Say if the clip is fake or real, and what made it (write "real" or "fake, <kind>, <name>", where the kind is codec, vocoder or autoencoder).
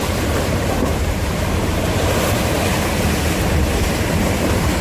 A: fake, vocoder, BigVGAN v2